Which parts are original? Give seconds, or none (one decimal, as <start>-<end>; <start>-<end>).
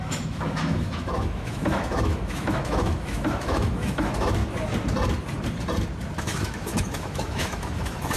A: 4.4-6.2